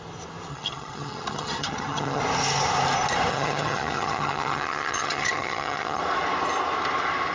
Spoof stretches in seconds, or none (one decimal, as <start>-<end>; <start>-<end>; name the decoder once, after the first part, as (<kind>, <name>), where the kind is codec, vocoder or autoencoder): 0.5-2.2 (vocoder, HiFi-GAN); 3.3-6.0